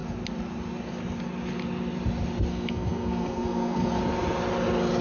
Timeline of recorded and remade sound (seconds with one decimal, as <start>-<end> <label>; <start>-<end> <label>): 0.0-2.5 recorded; 2.5-4.0 remade; 4.0-5.0 recorded